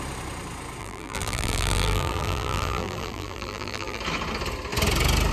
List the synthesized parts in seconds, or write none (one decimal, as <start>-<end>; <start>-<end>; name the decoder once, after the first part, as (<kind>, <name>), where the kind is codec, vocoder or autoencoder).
0.8-4.0 (vocoder, BigVGAN v2)